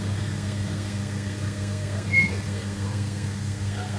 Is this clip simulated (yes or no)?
yes